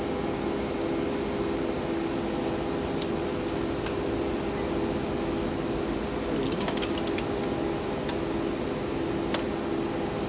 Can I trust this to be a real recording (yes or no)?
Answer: yes